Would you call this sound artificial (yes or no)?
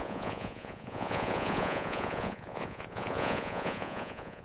yes